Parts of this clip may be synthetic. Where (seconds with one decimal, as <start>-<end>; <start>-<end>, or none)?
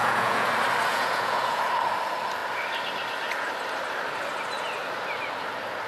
0.0-0.5; 0.9-1.6